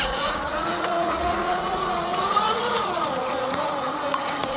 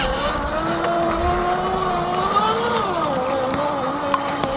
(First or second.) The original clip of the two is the second